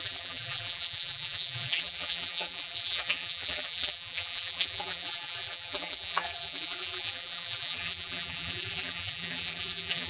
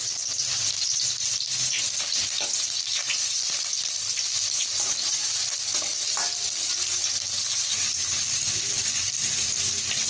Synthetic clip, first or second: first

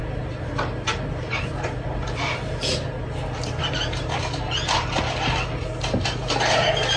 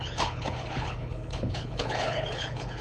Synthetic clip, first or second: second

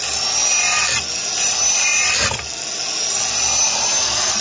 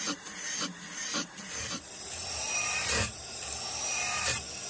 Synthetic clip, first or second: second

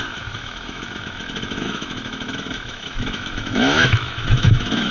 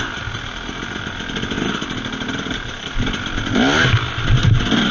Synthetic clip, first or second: first